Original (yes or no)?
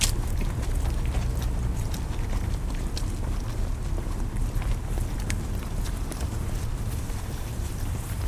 no